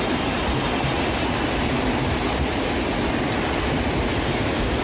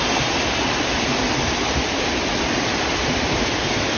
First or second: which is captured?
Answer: first